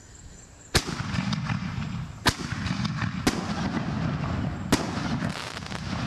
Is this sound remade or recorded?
recorded